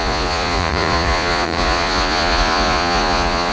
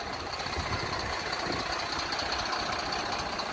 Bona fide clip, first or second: second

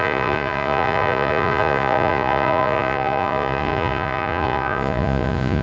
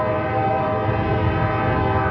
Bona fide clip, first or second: second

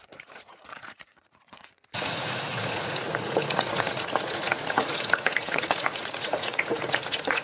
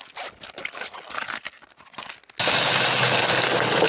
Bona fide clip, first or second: second